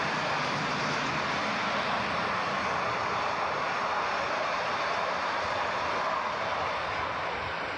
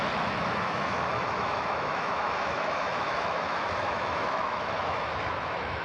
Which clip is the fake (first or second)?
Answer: second